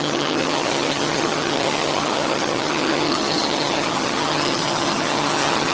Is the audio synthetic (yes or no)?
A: yes